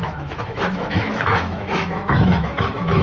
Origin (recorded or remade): remade